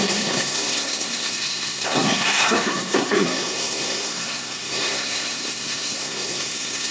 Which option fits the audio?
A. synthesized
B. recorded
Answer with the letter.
A